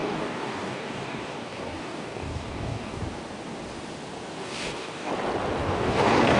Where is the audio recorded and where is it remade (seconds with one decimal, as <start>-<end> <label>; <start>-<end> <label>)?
0.0-3.0 remade; 3.0-4.4 recorded; 4.4-5.1 remade; 5.1-5.6 recorded; 5.6-6.4 remade

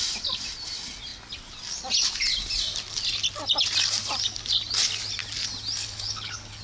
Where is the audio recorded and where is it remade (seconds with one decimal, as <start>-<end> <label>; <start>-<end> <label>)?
0.0-5.8 recorded; 5.8-6.6 remade

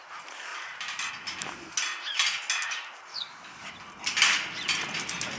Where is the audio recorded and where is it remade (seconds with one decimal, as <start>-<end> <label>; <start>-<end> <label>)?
0.0-3.1 recorded; 3.1-3.7 remade; 3.7-5.4 recorded

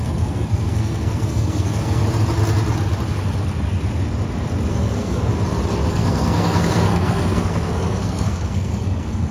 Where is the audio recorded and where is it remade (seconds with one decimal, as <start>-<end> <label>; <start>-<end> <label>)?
0.0-2.0 remade; 2.0-4.7 recorded; 4.7-5.3 remade; 5.3-5.9 recorded; 5.9-9.3 remade

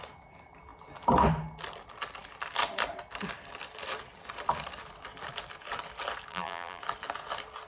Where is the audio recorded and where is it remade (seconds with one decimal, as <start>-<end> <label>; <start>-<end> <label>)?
0.0-6.3 recorded; 6.3-6.8 remade; 6.8-7.7 recorded

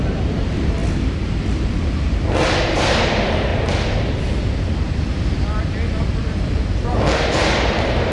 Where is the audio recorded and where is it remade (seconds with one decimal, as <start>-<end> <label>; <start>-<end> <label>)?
0.0-0.8 remade; 0.8-2.0 recorded; 2.0-3.5 remade; 3.5-6.2 recorded; 6.2-8.1 remade